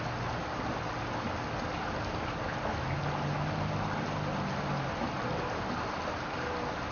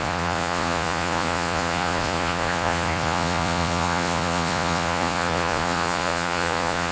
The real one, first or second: first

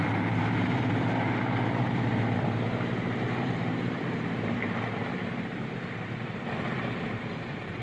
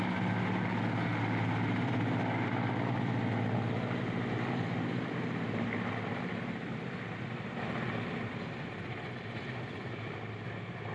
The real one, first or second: second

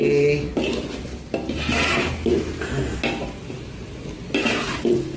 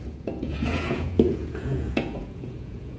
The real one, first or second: first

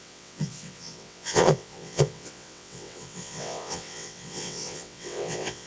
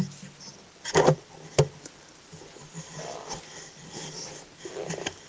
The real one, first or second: second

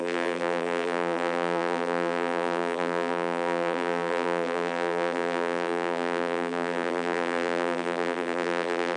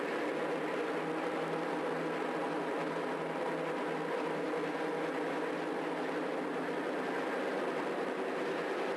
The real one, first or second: second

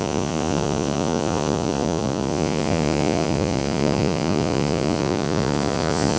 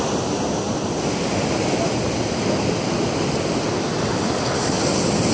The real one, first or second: second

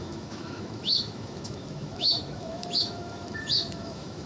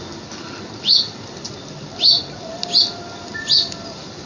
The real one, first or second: second